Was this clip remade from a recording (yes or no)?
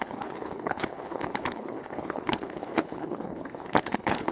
yes